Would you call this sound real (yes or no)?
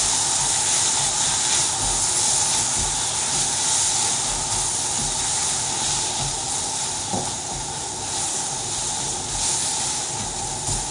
yes